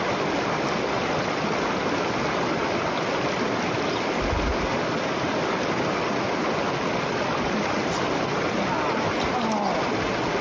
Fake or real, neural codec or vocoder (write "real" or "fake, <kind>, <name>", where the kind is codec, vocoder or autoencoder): real